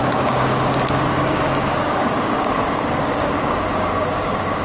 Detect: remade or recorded remade